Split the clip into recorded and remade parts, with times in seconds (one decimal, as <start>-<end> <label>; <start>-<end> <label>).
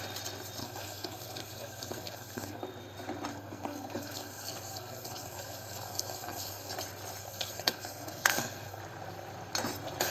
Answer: 0.0-0.6 recorded; 0.6-2.6 remade; 2.6-3.3 recorded; 3.3-6.7 remade; 6.7-7.2 recorded; 7.2-8.8 remade; 8.8-10.1 recorded